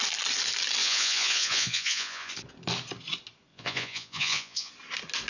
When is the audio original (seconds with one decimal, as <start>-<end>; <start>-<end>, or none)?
0.0-0.8; 2.3-3.5; 4.7-5.3